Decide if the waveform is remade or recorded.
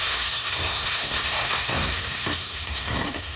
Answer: remade